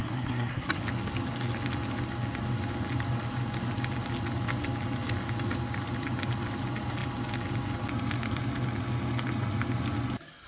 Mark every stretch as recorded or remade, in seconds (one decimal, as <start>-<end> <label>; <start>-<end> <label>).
0.0-0.8 remade; 0.8-10.5 recorded